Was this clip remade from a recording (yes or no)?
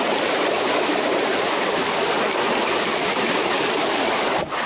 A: no